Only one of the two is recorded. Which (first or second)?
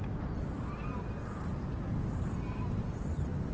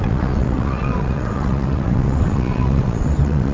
first